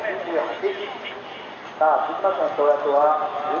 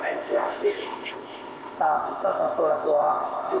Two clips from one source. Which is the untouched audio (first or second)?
first